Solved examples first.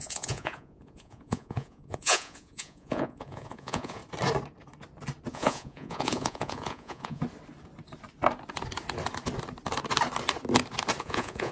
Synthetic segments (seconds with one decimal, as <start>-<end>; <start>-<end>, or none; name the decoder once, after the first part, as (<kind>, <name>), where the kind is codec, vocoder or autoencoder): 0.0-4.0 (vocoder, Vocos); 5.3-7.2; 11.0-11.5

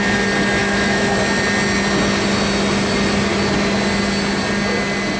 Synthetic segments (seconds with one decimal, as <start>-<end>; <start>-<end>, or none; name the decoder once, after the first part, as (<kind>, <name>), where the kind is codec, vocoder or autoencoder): 0.6-1.2 (autoencoder, DAC-VAE)

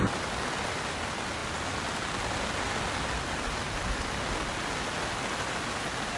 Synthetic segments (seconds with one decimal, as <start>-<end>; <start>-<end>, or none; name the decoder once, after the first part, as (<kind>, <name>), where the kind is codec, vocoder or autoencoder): none